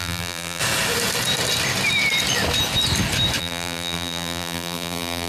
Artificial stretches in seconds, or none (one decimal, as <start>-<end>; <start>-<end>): 0.0-0.6; 3.4-5.3